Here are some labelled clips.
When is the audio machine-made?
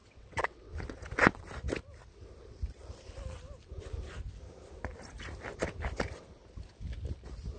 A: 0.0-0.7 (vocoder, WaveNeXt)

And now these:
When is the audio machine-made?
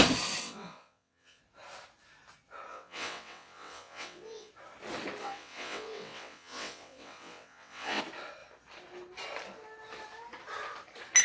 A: 0.4-1.4 (vocoder, WaveNeXt); 2.7-4.5; 5.2-8.0